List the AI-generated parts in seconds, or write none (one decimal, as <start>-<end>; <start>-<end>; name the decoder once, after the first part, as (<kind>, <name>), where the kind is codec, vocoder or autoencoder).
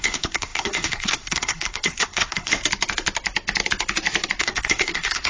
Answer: 0.0-2.5 (codec, SNAC); 4.4-5.3